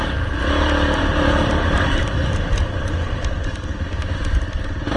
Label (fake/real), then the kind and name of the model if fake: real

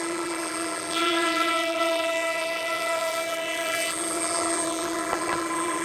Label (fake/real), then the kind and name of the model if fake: fake, vocoder, BigVGAN v2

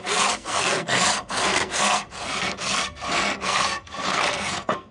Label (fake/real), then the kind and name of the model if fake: fake, codec, SNAC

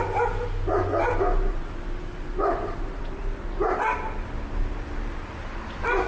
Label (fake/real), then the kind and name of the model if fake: real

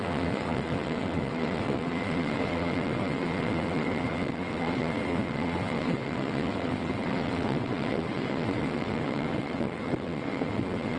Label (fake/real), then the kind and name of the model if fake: fake, vocoder, WaveNeXt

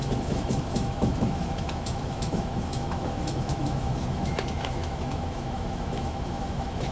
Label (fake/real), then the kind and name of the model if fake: fake, autoencoder, DAC-VAE